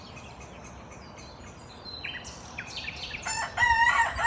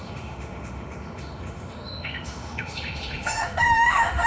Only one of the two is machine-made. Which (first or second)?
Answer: second